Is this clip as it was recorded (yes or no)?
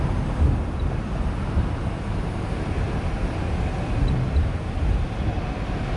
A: yes